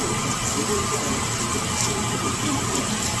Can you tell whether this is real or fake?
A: real